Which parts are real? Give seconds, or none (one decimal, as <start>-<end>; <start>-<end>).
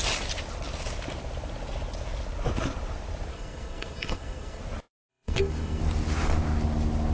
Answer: 0.0-3.3; 4.6-5.1; 5.8-7.1